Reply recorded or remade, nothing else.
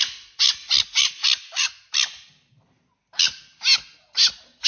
recorded